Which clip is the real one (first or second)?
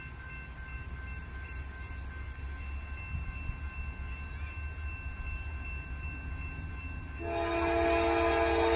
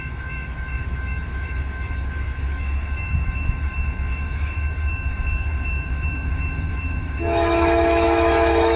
first